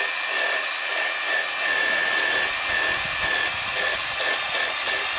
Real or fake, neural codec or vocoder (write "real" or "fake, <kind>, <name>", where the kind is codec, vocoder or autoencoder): real